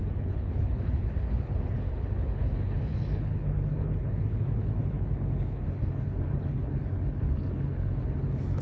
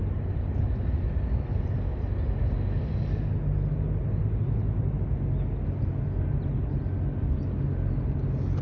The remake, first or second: first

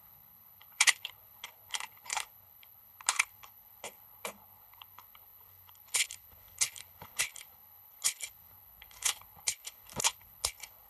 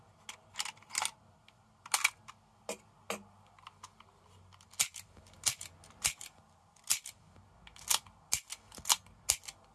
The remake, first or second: first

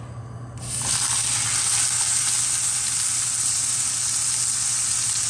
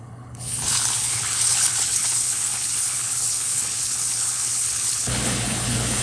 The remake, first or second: second